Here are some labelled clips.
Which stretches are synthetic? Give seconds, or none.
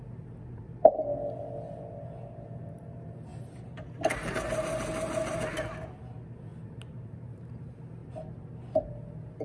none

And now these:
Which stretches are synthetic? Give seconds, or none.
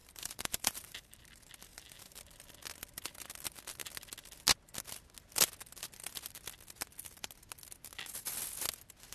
0.0-1.2 (vocoder, BigVGAN v2); 1.7-2.2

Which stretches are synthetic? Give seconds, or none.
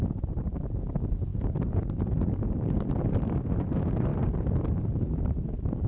0.0-5.9 (vocoder, BigVGAN v2)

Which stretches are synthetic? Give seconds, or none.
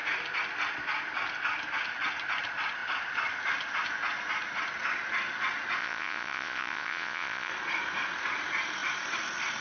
5.8-7.5 (vocoder, Vocos)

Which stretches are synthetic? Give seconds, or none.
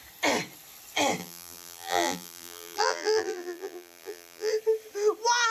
1.2-4.5 (vocoder, BigVGAN v2)